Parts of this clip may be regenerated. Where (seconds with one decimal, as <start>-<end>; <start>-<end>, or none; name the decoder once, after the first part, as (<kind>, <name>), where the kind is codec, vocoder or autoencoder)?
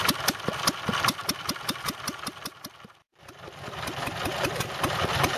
none